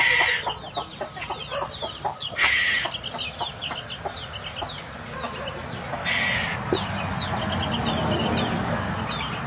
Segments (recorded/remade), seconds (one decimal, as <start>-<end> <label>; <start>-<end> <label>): 0.0-2.1 recorded; 2.1-2.8 remade; 2.8-9.5 recorded